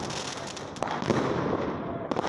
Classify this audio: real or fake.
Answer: real